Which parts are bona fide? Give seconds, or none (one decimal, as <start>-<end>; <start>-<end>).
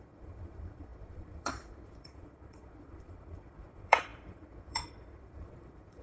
none